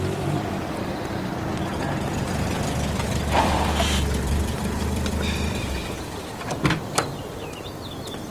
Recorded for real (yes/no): no